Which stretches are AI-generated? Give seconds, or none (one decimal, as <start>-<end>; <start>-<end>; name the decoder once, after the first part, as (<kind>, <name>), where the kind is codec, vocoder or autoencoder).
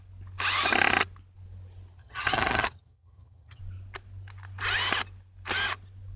2.0-3.6 (vocoder, HiFi-GAN)